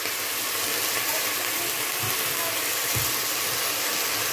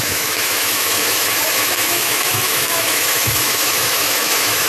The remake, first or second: second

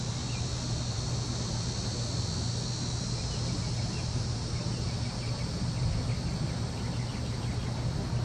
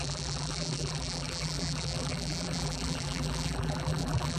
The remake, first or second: second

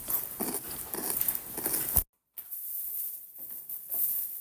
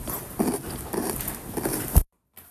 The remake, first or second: second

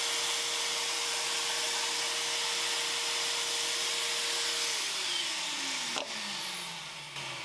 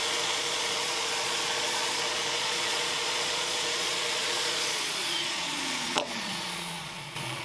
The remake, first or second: second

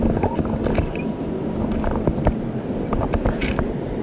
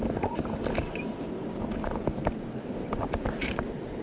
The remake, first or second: second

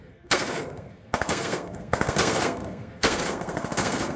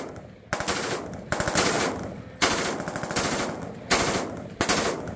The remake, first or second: first